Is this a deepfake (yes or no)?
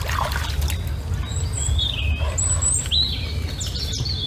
no